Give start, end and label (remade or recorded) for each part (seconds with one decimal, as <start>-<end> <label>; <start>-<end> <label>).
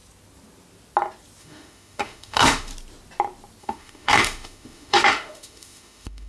0.0-1.4 recorded; 1.4-2.7 remade; 2.7-3.6 recorded; 3.6-6.3 remade